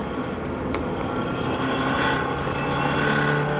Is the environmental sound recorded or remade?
recorded